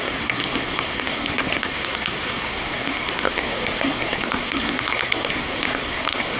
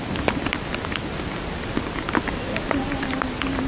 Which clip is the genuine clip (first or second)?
second